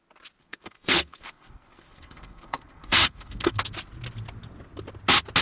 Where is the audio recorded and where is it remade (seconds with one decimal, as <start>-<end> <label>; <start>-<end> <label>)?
0.0-0.4 recorded; 0.4-3.6 remade; 3.6-5.4 recorded